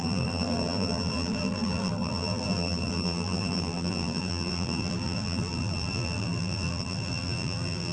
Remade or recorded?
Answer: remade